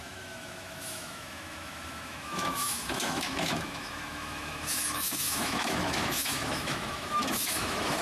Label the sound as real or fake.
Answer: fake